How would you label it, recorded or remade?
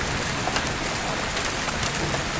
recorded